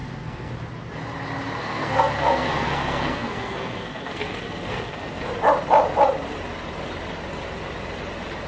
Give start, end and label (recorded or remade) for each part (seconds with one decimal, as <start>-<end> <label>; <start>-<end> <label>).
0.0-0.5 remade; 0.5-1.6 recorded; 1.6-5.3 remade; 5.3-8.5 recorded